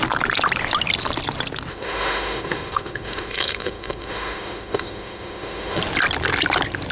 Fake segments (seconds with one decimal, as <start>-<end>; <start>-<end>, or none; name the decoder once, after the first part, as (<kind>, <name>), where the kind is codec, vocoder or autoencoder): 1.7-5.8 (autoencoder, DAC-VAE)